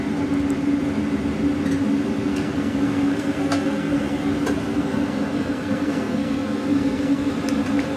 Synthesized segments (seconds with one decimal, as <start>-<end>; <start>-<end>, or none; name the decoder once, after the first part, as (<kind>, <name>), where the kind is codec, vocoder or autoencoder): 2.3-4.3 (codec, SNAC); 4.7-7.3